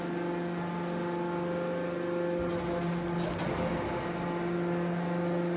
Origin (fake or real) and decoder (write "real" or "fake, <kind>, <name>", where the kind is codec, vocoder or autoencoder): real